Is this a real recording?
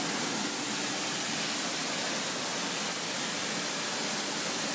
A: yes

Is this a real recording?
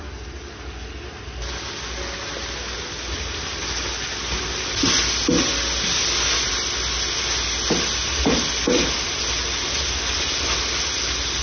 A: yes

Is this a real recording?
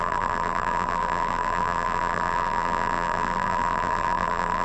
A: no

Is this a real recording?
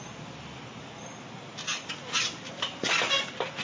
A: yes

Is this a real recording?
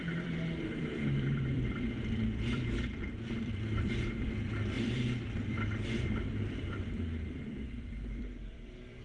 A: no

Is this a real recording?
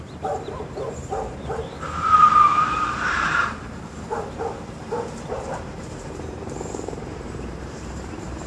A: no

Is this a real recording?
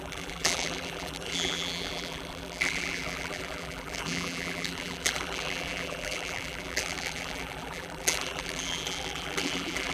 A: no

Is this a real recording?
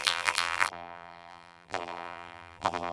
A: no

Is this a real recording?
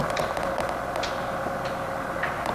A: no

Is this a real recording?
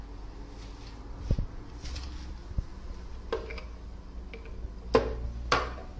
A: yes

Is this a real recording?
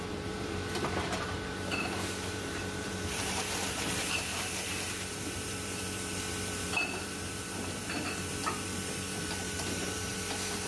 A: no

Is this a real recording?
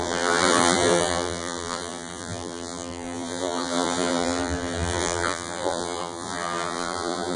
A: no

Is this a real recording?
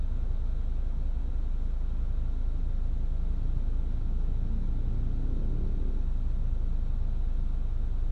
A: yes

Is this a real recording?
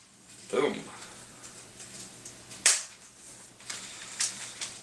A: no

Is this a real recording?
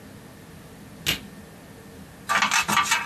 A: yes